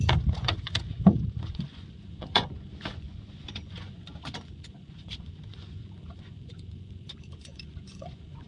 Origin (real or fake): fake